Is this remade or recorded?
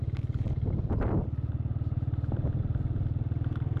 recorded